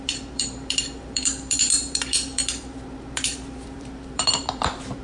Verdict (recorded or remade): remade